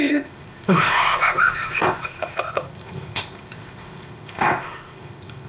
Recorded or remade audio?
remade